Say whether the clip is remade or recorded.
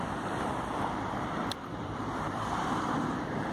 remade